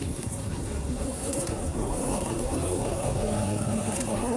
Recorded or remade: remade